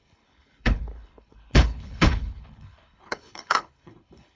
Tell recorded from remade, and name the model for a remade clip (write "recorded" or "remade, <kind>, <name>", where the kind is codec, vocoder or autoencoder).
remade, codec, HILCodec